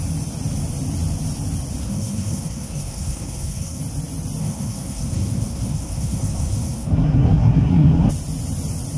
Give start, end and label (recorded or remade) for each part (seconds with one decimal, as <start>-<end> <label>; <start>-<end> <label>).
0.0-1.8 recorded; 1.8-3.8 remade; 3.8-4.4 recorded; 4.4-8.1 remade; 8.1-9.0 recorded